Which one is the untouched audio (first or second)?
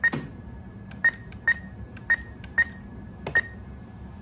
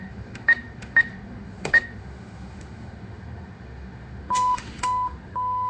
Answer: first